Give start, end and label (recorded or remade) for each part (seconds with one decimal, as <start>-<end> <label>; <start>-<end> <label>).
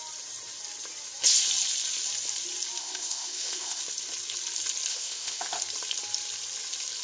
0.0-2.8 recorded; 2.8-3.8 remade; 3.8-4.9 recorded; 4.9-5.4 remade; 5.4-7.0 recorded